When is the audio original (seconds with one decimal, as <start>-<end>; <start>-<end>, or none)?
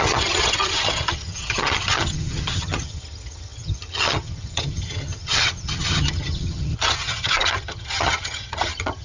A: none